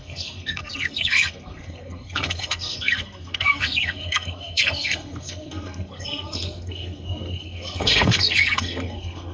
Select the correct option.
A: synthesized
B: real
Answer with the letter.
A